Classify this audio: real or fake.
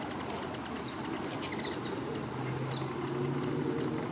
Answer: real